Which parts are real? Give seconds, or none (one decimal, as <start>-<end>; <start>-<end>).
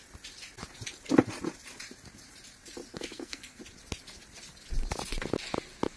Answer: 0.0-2.9; 3.6-6.0